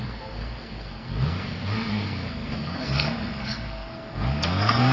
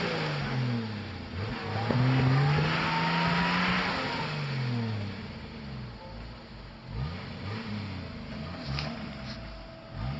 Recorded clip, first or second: second